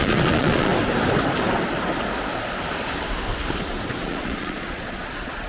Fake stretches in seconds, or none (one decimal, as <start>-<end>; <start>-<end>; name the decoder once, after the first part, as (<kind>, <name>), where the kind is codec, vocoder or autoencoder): 0.0-0.7 (vocoder, Vocos); 4.0-5.5